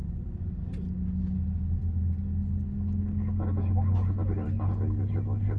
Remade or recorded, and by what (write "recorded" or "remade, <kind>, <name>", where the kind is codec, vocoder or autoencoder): recorded